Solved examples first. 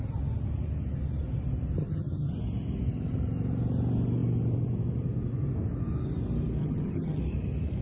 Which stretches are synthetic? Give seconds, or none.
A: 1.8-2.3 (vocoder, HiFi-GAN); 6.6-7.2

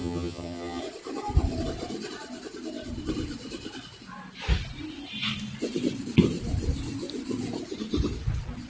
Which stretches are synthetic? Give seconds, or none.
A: 0.0-0.8 (vocoder, HiFi-GAN)

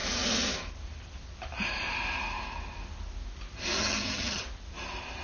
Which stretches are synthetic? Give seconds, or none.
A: 3.8-4.4 (vocoder, HiFi-GAN)

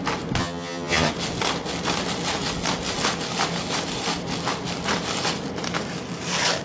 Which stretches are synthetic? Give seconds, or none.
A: 0.4-1.1 (vocoder, HiFi-GAN)

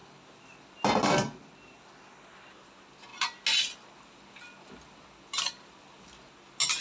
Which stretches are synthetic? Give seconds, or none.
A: none

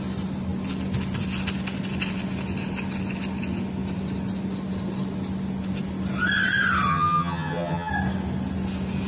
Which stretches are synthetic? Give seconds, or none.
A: 6.9-7.9 (vocoder, HiFi-GAN)

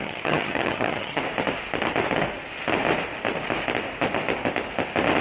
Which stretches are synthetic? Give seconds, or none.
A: 0.0-1.2 (vocoder, HiFi-GAN)